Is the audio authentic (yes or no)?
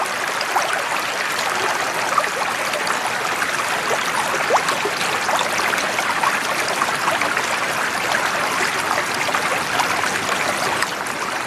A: yes